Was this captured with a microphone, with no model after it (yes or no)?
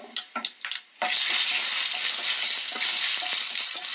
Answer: yes